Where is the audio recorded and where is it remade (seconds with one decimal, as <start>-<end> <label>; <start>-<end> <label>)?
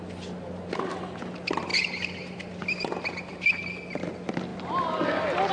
0.0-5.5 recorded